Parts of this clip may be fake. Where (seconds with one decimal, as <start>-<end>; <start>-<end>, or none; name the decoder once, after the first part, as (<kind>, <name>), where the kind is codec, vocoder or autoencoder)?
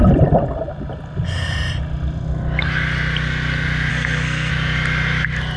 3.9-4.5 (codec, SNAC)